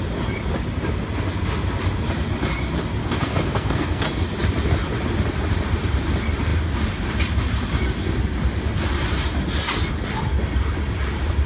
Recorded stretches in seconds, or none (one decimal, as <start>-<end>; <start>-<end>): 0.0-3.0; 4.0-11.5